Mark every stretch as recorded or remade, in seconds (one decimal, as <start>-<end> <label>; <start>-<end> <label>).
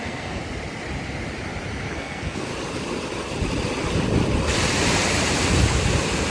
0.0-0.4 remade; 0.4-1.9 recorded; 1.9-2.5 remade; 2.5-6.3 recorded